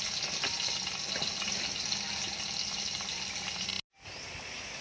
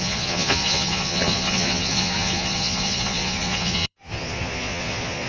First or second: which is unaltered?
first